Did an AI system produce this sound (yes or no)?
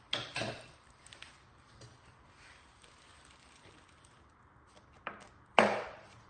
no